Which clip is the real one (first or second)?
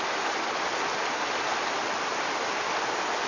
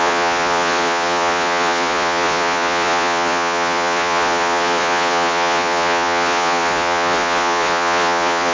first